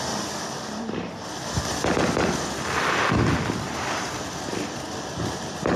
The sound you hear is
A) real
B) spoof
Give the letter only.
A